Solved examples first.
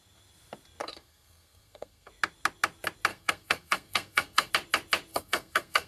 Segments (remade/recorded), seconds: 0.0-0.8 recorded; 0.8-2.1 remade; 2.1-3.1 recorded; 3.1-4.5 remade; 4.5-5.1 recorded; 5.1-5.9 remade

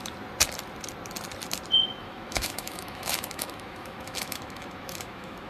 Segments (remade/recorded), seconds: 0.0-2.0 recorded; 2.0-5.5 remade

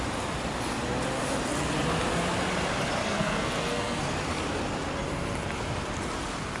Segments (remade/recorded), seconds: 0.0-3.0 recorded; 3.0-4.0 remade; 4.0-6.6 recorded

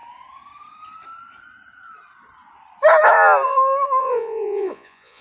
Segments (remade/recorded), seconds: 0.0-4.0 recorded; 4.0-5.2 remade

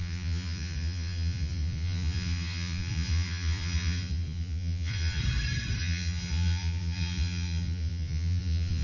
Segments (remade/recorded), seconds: 0.0-5.2 remade; 5.2-5.8 recorded; 5.8-8.8 remade